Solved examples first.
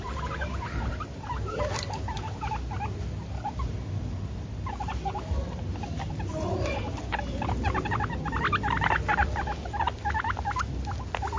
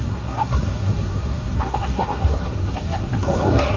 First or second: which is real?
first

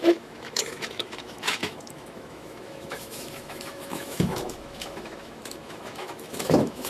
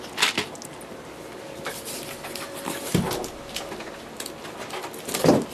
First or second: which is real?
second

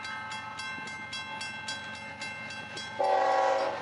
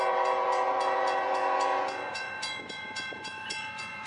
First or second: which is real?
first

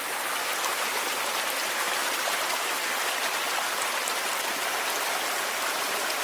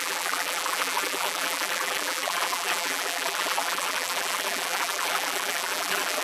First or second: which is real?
first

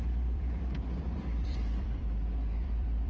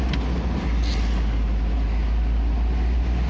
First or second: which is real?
second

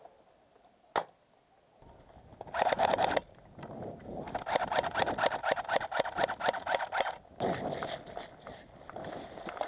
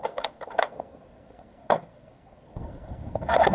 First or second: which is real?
first